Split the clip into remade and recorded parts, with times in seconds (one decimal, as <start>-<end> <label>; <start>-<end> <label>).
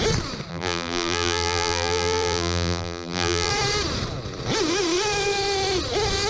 0.0-0.5 recorded; 0.5-3.5 remade; 3.5-6.3 recorded